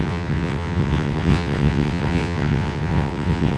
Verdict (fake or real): fake